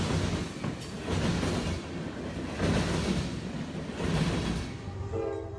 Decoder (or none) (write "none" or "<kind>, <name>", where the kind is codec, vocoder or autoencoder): none